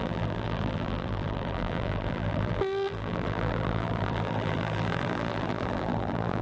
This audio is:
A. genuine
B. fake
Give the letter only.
B